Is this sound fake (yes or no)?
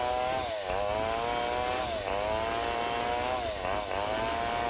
no